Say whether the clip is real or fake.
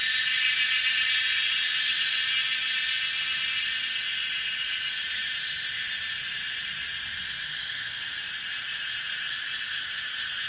real